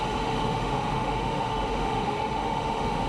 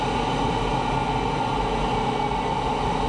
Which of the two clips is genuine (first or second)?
second